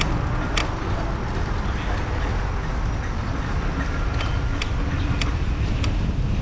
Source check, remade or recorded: recorded